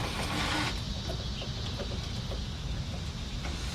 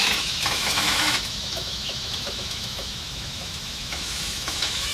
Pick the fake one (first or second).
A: second